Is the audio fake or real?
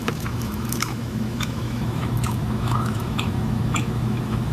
fake